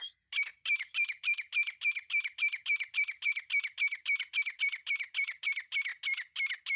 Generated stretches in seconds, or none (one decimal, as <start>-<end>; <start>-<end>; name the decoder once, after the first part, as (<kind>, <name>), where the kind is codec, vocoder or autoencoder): none